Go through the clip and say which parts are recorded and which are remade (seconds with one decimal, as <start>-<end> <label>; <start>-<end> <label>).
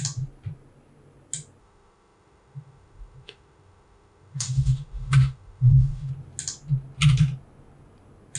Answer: 0.0-1.6 recorded; 1.6-6.1 remade; 6.1-8.4 recorded